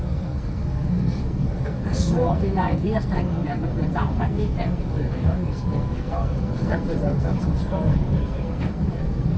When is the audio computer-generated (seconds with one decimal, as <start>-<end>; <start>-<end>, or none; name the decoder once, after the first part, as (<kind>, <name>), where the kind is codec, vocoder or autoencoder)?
0.0-9.4 (codec, SNAC)